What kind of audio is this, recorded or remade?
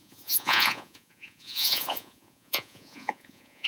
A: remade